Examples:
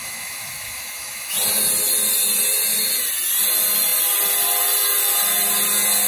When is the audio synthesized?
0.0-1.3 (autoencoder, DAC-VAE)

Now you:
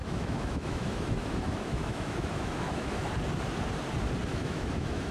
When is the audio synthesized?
0.0-3.1 (autoencoder, DAC-VAE); 4.3-5.1